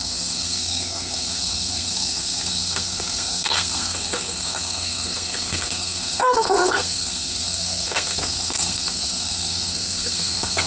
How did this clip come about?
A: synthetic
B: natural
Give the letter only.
A